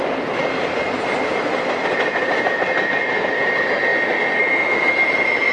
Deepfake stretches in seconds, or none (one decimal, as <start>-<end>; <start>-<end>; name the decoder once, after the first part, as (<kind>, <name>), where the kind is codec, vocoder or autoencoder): none